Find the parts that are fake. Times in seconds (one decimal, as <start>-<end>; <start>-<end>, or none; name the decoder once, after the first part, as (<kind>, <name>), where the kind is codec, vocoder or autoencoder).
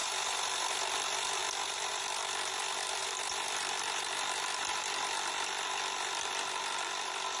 none